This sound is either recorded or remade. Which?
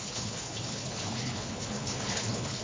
remade